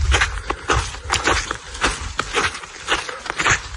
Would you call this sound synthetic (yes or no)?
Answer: no